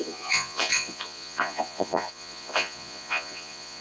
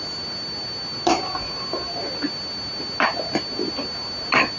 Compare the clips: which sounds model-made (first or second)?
first